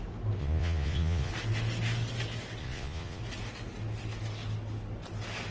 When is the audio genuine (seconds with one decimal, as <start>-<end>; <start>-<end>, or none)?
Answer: 0.0-0.4; 1.3-2.6; 3.2-5.5